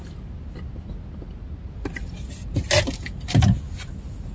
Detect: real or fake real